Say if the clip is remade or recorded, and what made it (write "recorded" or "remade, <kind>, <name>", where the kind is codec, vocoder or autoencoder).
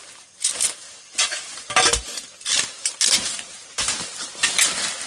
recorded